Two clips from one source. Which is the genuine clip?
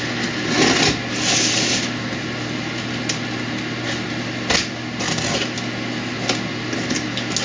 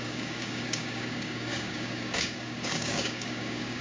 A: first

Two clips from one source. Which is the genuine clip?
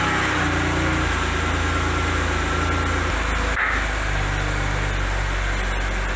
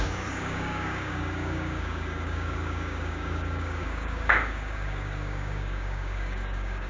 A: first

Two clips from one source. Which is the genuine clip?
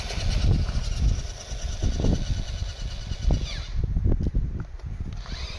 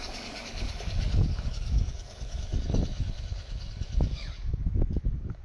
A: first